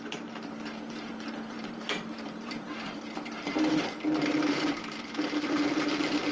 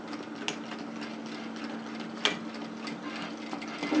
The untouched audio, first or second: second